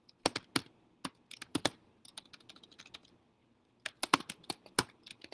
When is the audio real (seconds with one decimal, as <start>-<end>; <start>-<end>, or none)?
0.0-1.5; 2.8-3.4